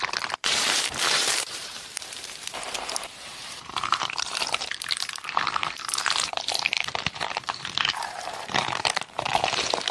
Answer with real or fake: fake